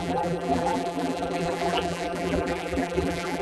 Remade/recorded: remade